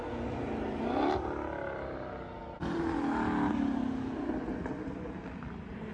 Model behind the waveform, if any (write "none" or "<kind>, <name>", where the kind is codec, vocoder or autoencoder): none